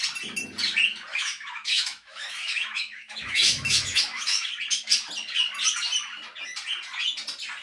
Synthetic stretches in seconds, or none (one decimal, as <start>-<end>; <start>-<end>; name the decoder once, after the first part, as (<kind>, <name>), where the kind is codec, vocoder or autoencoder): 1.1-4.5 (autoencoder, DAC-VAE)